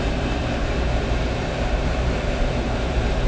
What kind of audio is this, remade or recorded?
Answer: remade